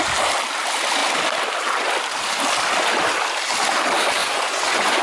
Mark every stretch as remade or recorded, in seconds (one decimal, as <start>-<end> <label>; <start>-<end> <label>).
0.0-4.2 recorded; 4.2-5.0 remade